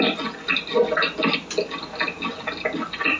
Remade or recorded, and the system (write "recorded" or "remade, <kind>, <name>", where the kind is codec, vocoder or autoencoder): recorded